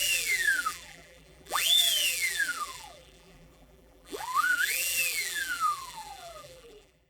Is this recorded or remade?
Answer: remade